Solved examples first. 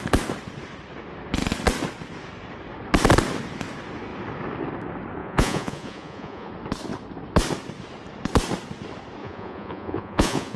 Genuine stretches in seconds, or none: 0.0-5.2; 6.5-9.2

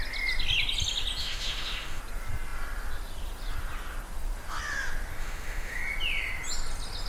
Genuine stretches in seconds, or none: 0.0-1.2; 2.0-5.2; 5.8-7.1

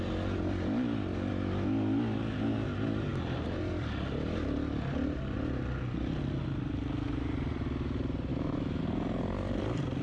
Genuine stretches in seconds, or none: 0.0-8.3; 8.8-10.0

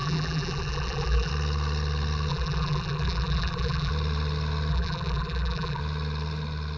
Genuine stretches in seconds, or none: 1.3-2.3; 3.9-4.7; 5.8-6.8